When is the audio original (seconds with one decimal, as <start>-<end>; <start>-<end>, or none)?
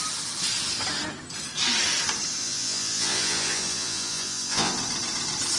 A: 0.0-2.4; 4.7-5.6